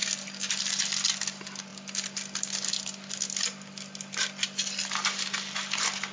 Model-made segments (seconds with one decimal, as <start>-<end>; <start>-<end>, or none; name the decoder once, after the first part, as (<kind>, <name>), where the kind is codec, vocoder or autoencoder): none